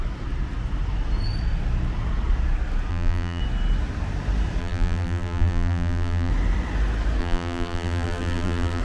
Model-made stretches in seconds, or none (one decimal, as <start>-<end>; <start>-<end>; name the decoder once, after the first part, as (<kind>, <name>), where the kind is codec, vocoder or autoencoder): 2.9-3.4 (vocoder, BigVGAN v2); 4.6-6.3; 7.2-8.8